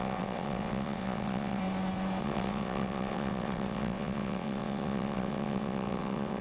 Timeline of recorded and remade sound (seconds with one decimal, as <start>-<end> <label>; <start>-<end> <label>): 0.0-1.6 remade; 1.6-2.2 recorded; 2.2-6.4 remade